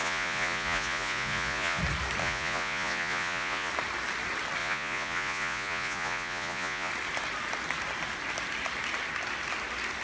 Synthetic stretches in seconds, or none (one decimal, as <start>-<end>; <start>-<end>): 0.0-1.8; 2.2-3.7; 4.6-6.9